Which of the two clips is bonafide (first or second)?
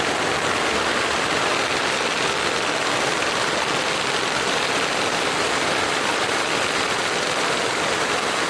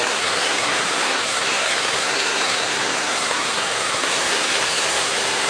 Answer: first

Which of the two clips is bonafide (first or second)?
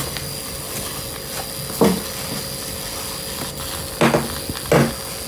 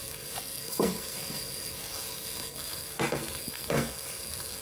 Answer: first